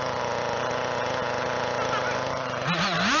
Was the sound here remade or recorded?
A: recorded